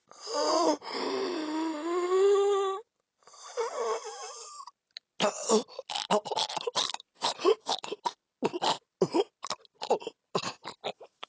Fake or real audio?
real